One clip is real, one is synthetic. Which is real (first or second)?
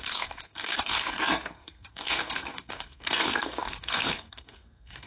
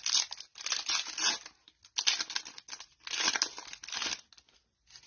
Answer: second